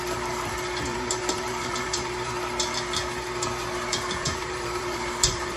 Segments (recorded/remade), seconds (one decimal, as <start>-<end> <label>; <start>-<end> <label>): 0.0-0.9 recorded; 0.9-2.3 remade; 2.3-3.9 recorded; 3.9-5.6 remade